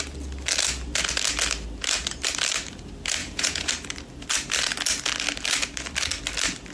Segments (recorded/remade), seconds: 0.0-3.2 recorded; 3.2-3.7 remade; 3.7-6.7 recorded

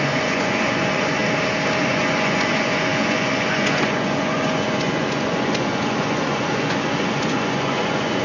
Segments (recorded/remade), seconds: 0.0-1.2 remade; 1.2-1.8 recorded; 1.8-8.2 remade

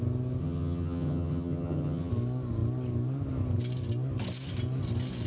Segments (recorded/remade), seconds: 0.0-0.4 recorded; 0.4-2.1 remade; 2.1-5.3 recorded